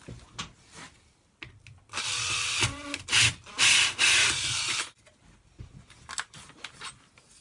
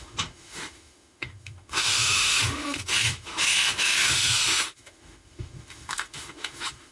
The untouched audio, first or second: first